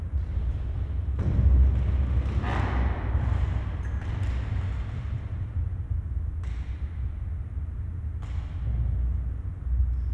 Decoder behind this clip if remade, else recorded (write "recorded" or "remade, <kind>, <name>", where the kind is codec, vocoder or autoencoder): recorded